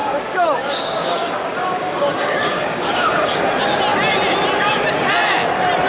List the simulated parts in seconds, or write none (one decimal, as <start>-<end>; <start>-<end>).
0.0-3.5